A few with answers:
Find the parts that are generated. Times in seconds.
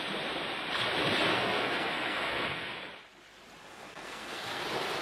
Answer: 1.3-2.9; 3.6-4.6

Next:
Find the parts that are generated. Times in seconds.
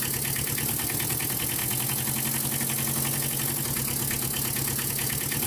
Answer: none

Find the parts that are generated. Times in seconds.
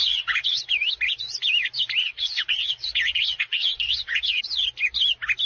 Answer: 0.0-0.6; 2.0-4.4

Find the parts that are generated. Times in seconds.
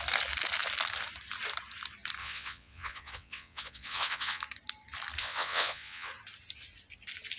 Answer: 2.2-4.4; 5.2-6.1